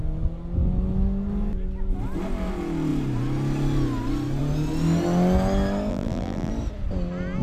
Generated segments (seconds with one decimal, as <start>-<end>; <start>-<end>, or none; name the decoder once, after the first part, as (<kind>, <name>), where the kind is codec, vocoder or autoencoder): 5.9-6.5 (vocoder, BigVGAN v2)